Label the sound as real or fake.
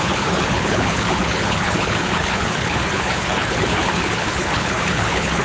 fake